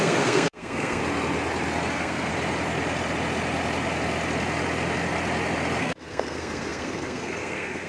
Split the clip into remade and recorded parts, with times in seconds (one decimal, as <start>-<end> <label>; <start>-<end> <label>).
0.0-1.0 remade; 1.0-1.9 recorded; 1.9-2.3 remade; 2.3-5.8 recorded; 5.8-7.9 remade